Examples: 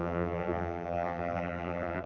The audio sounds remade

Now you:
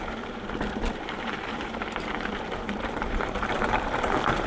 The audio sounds remade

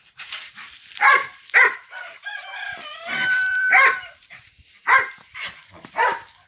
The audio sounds remade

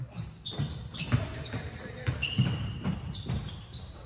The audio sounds remade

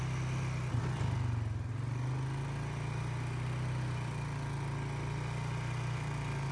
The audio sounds recorded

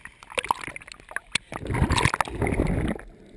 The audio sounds recorded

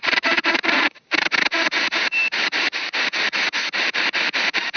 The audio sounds remade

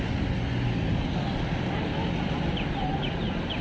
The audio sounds recorded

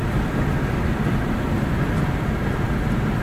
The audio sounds recorded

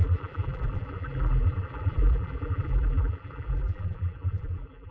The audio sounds remade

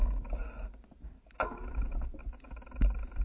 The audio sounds recorded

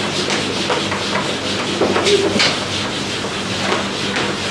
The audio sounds recorded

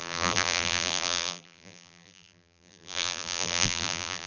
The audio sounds remade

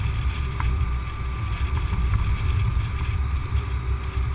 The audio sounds remade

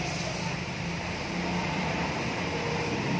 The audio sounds remade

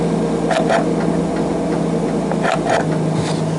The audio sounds recorded